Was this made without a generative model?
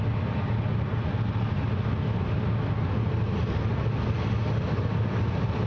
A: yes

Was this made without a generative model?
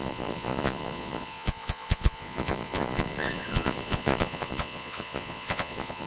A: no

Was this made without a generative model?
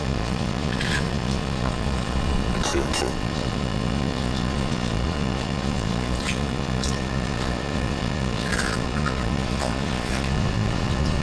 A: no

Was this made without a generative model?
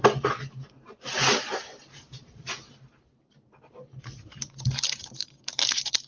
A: no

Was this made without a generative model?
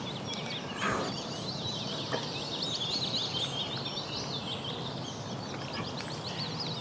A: yes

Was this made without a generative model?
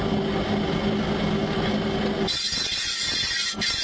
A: yes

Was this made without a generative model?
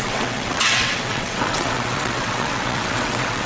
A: no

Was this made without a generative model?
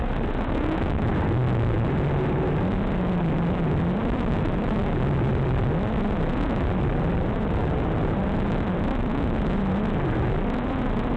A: yes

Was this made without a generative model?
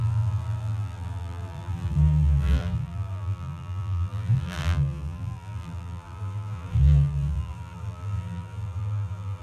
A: no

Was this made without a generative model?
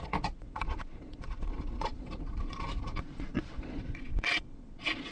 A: no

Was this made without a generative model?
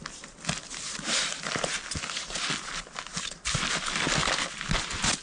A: yes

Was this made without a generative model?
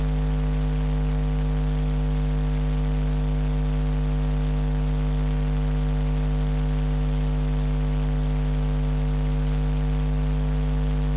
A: yes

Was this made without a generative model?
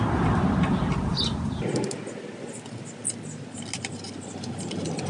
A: yes